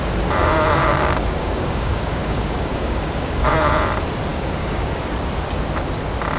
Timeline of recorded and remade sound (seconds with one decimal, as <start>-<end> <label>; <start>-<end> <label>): 0.0-0.8 recorded; 0.8-3.5 remade; 3.5-4.3 recorded; 4.3-5.0 remade; 5.0-6.4 recorded